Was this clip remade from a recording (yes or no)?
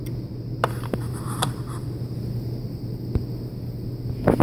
no